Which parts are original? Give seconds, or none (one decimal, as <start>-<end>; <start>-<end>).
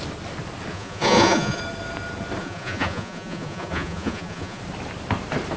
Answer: 0.0-0.7; 1.6-2.4; 4.6-5.6